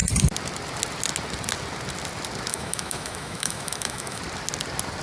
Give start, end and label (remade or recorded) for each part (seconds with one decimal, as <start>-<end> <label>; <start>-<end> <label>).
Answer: 0.0-2.5 recorded; 2.5-4.2 remade; 4.2-5.0 recorded

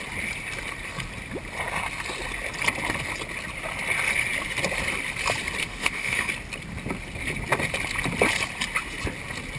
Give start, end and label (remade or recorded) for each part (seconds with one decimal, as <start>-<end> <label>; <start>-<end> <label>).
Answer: 0.0-5.6 recorded; 5.6-6.3 remade; 6.3-9.6 recorded

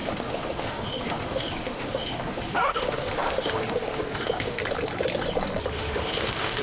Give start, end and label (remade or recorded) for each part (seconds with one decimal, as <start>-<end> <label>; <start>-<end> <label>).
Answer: 0.0-4.6 remade; 4.6-5.7 recorded; 5.7-6.6 remade